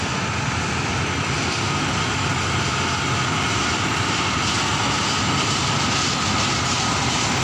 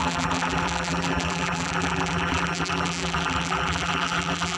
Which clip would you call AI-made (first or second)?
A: second